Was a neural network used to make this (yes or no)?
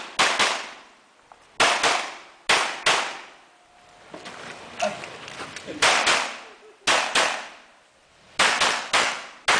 no